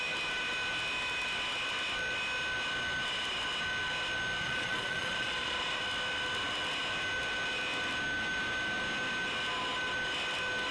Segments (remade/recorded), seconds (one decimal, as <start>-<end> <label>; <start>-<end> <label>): 0.0-4.4 recorded; 4.4-5.8 remade; 5.8-10.7 recorded